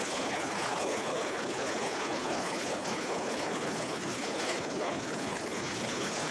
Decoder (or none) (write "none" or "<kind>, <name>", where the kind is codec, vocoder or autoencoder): codec, HILCodec